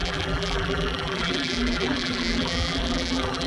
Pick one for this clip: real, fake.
fake